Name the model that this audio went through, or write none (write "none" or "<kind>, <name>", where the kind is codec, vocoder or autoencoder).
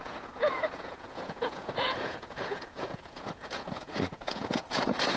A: vocoder, Vocos